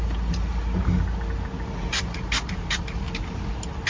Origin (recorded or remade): recorded